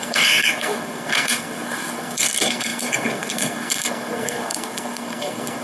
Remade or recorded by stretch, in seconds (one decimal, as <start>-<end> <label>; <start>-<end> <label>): 0.0-5.6 remade